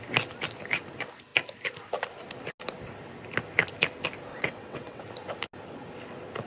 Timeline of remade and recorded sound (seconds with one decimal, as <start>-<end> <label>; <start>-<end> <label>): 0.0-4.3 recorded; 4.3-5.0 remade; 5.0-6.5 recorded